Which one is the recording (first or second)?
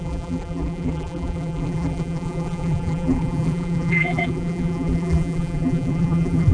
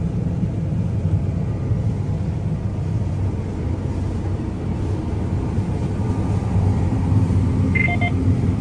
second